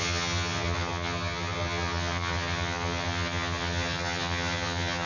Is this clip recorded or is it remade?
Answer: remade